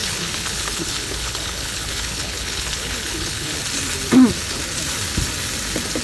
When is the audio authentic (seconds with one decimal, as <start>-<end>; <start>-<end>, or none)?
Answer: 3.6-6.0